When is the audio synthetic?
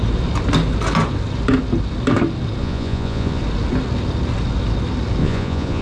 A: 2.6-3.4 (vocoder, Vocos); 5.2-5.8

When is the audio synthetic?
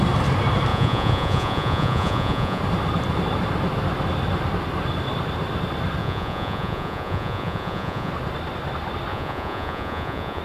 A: 0.7-2.6 (vocoder, Vocos); 6.0-8.1; 9.1-10.4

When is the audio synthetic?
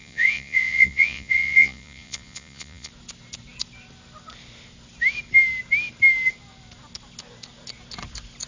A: 0.0-2.9 (vocoder, Vocos)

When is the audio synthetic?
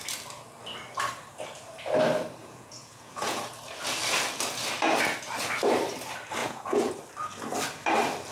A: 2.4-3.4 (vocoder, Vocos); 6.4-6.9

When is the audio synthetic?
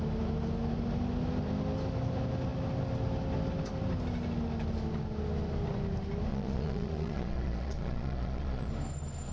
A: 6.3-8.7 (vocoder, Vocos)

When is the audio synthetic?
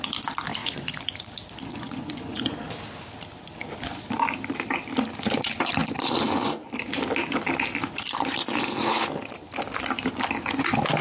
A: 0.6-1.2 (vocoder, Vocos); 1.7-2.6